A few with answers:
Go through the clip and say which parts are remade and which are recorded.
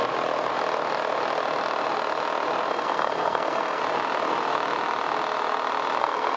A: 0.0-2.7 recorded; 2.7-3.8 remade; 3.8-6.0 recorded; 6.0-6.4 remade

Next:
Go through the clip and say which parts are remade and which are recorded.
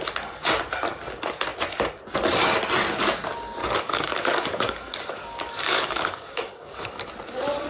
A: 0.0-3.6 recorded; 3.6-7.1 remade; 7.1-7.7 recorded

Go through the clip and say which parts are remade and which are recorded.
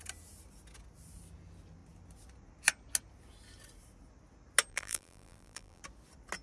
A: 0.0-4.7 recorded; 4.7-5.8 remade; 5.8-6.4 recorded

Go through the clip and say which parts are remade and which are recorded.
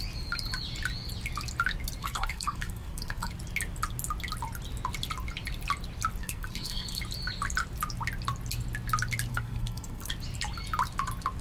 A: 0.0-2.0 recorded; 2.0-3.3 remade; 3.3-6.2 recorded; 6.2-7.0 remade; 7.0-9.3 recorded; 9.3-10.1 remade; 10.1-11.4 recorded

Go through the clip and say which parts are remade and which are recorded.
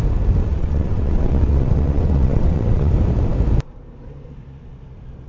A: 0.0-0.5 recorded; 0.5-2.9 remade; 2.9-5.3 recorded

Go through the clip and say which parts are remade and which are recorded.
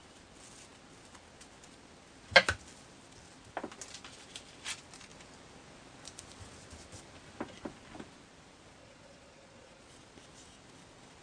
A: 0.0-8.8 recorded; 8.8-9.8 remade; 9.8-11.2 recorded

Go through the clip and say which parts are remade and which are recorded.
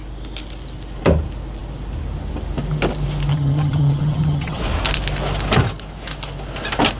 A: 0.0-3.3 recorded; 3.3-4.6 remade; 4.6-7.0 recorded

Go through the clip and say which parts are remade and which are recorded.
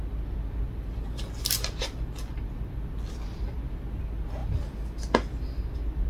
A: 0.0-6.1 recorded